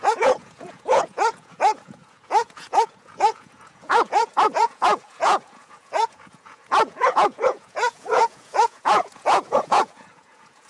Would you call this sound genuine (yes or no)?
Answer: no